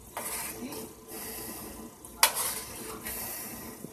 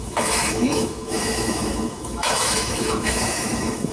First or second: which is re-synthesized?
second